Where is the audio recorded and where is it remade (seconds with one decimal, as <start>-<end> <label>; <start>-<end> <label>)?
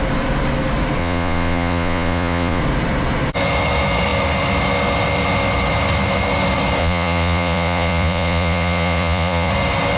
0.0-1.0 recorded; 1.0-2.6 remade; 2.6-6.8 recorded; 6.8-9.5 remade; 9.5-10.0 recorded